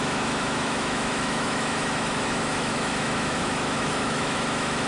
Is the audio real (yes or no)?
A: no